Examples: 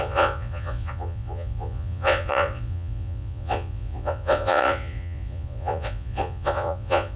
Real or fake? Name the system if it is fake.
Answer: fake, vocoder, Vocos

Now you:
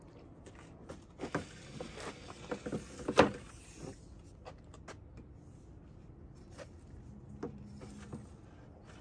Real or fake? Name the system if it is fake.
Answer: real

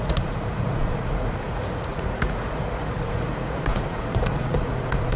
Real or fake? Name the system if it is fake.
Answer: fake, vocoder, Vocos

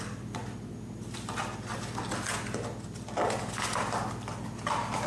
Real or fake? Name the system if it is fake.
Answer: real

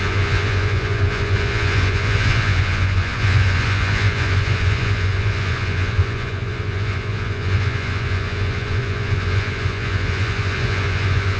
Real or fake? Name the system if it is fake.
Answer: fake, vocoder, Vocos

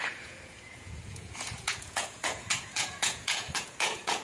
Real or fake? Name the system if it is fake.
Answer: fake, vocoder, Vocos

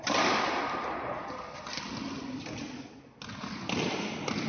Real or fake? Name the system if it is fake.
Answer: real